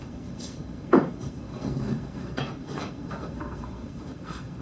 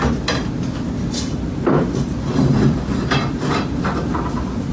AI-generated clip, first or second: first